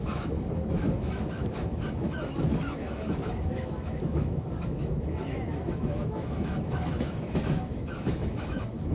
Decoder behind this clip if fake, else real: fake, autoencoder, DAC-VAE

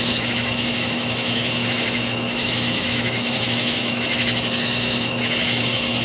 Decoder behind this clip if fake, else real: fake, autoencoder, DAC-VAE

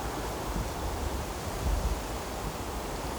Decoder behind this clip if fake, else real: real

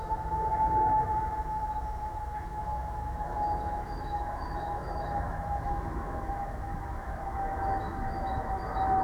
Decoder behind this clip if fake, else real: fake, autoencoder, DAC-VAE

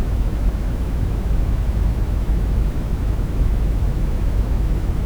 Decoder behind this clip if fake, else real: fake, autoencoder, DAC-VAE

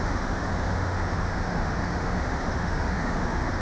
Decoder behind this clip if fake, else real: fake, autoencoder, DAC-VAE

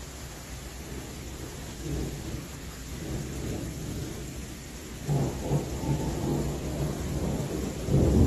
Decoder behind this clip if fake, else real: real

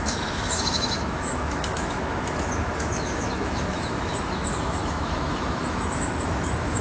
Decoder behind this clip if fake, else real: fake, autoencoder, DAC-VAE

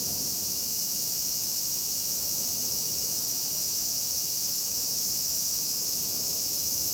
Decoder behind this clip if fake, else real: fake, autoencoder, DAC-VAE